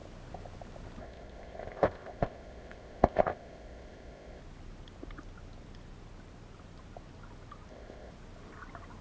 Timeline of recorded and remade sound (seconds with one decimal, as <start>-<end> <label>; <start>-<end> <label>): 0.0-1.0 recorded; 1.0-4.4 remade; 4.4-7.7 recorded; 7.7-8.1 remade; 8.1-9.0 recorded